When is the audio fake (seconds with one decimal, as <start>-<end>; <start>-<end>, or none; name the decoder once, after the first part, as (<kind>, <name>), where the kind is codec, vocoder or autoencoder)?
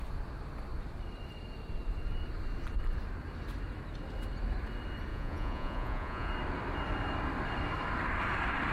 5.1-6.3 (vocoder, Vocos)